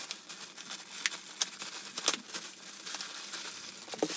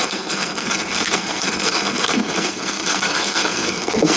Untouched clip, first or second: first